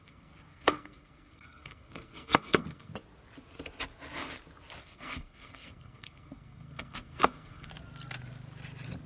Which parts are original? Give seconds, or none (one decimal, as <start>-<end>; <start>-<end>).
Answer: 2.9-4.8; 7.7-9.1